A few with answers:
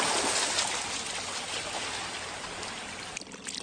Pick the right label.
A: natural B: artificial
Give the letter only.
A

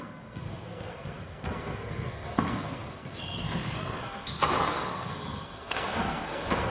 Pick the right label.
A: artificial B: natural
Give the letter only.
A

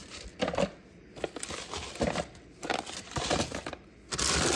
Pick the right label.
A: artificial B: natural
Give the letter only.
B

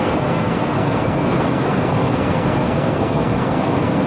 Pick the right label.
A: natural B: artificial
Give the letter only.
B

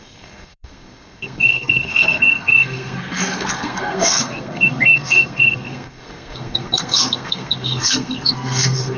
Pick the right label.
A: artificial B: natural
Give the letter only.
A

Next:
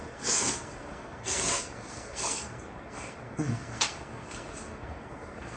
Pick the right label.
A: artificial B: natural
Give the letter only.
A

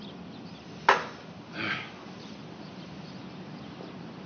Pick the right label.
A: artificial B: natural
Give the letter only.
B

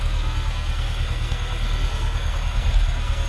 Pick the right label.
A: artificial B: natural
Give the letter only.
A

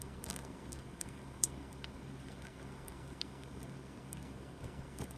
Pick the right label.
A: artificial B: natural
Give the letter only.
A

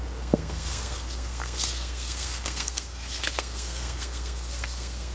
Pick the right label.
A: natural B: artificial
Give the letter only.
B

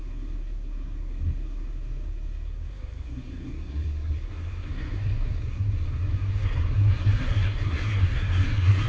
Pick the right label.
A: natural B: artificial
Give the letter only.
B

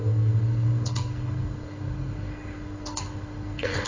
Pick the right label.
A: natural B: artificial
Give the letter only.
B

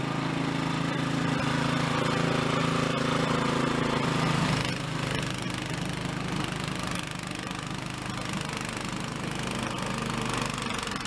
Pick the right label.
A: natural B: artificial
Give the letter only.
A